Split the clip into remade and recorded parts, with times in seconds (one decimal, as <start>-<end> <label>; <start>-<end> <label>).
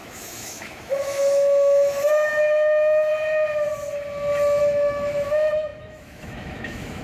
0.0-3.1 remade; 3.1-4.6 recorded; 4.6-7.0 remade